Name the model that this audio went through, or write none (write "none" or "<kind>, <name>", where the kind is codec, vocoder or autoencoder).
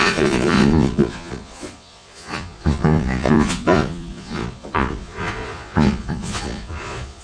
vocoder, Vocos